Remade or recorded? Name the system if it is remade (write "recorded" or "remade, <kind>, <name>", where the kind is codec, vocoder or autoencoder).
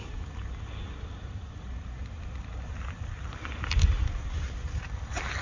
recorded